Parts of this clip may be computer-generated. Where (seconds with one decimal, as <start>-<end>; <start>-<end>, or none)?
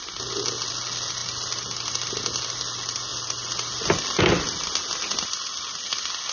none